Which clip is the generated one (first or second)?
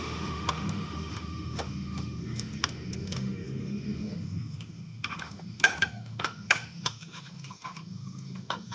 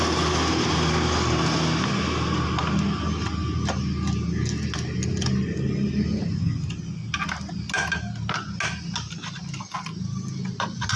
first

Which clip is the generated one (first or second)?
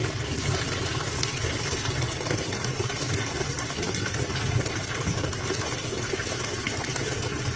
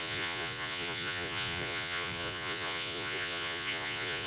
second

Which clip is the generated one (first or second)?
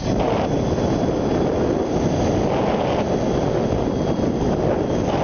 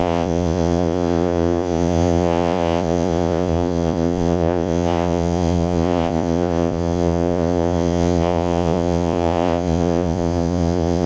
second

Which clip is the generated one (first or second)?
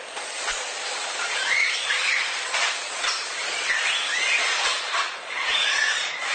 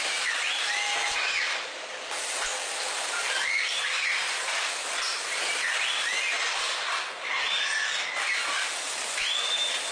first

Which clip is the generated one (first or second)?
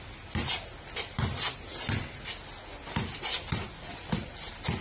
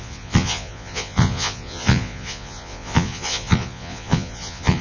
second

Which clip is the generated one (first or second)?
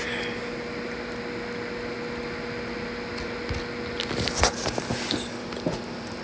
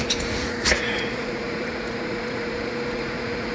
second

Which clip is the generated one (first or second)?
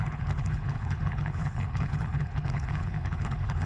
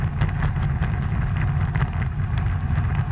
first